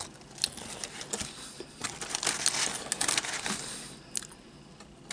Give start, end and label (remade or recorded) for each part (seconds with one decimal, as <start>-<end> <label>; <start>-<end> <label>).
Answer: 0.0-5.1 recorded